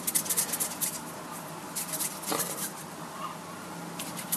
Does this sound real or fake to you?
real